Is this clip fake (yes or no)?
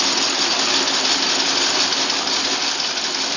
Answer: no